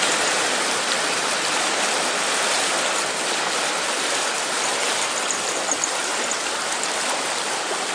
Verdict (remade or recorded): recorded